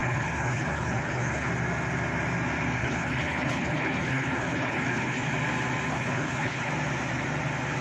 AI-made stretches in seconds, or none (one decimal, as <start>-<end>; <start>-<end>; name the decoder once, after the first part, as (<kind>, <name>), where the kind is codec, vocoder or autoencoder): 0.0-1.5 (codec, HILCodec); 2.8-5.3; 5.9-6.7